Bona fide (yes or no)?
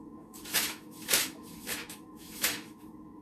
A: no